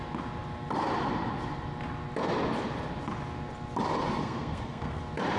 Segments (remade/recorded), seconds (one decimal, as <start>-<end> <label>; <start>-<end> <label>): 0.0-4.2 recorded; 4.2-5.0 remade; 5.0-5.4 recorded